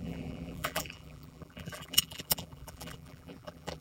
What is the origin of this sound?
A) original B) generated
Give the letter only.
B